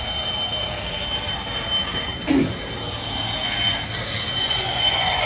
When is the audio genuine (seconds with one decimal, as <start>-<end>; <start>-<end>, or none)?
0.0-4.4